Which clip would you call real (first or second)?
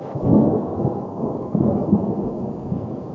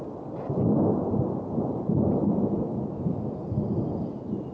second